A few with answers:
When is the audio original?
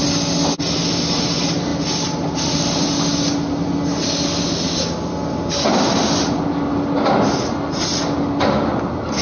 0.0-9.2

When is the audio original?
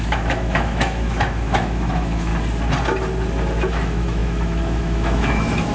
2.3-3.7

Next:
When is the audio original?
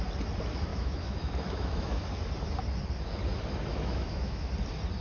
0.0-0.7; 2.1-3.7; 4.5-5.0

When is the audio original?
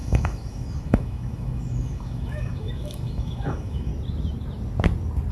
3.9-5.3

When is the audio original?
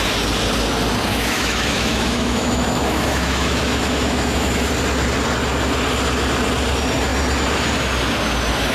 0.0-1.1; 4.7-8.7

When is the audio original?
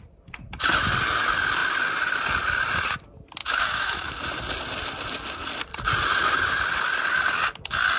0.0-3.4; 4.1-8.0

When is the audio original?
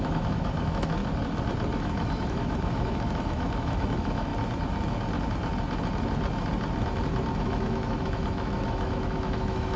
1.0-1.8; 4.3-7.4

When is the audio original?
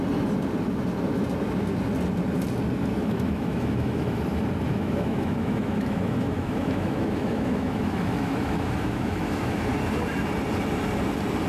0.0-3.0; 4.2-4.7; 9.6-11.5